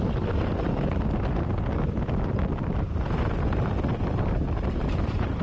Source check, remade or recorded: recorded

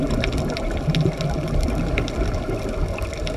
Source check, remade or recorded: recorded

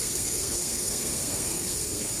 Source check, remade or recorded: remade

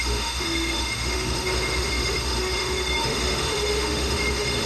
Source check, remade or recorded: remade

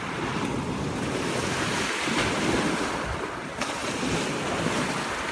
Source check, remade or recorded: recorded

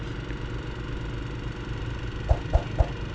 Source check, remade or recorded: recorded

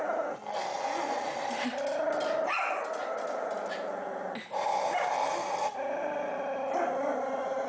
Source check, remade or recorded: recorded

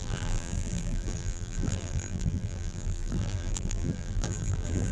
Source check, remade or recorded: remade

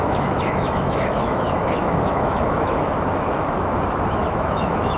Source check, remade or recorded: remade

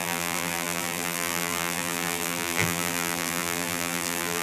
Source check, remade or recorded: remade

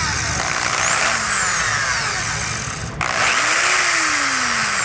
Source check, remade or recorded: recorded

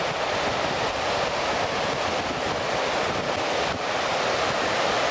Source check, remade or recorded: recorded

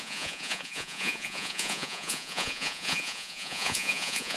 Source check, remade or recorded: remade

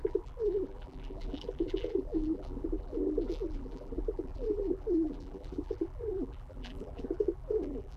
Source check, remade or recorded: remade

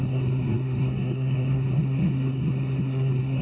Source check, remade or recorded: remade